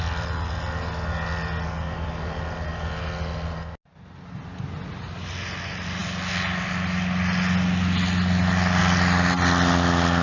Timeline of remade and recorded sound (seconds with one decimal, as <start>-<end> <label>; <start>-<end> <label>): 0.0-10.2 recorded